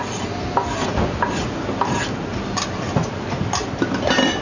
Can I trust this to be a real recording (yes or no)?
yes